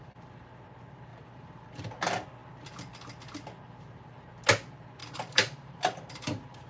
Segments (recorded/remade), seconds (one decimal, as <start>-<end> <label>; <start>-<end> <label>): 0.0-1.1 recorded; 1.1-1.7 remade; 1.7-5.0 recorded; 5.0-6.7 remade